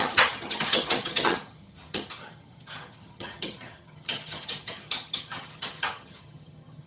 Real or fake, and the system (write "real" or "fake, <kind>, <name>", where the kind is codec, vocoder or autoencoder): fake, vocoder, HiFi-GAN